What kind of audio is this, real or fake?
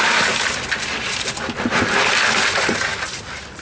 real